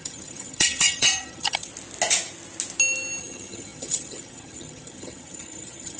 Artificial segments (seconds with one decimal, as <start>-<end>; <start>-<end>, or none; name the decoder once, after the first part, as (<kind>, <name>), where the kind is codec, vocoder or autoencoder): 0.0-1.7 (vocoder, HiFi-GAN); 3.2-6.0